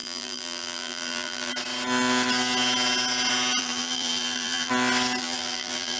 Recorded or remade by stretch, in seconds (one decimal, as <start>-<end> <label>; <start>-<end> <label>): 0.0-1.5 remade; 1.5-3.6 recorded; 3.6-4.7 remade; 4.7-5.2 recorded; 5.2-6.0 remade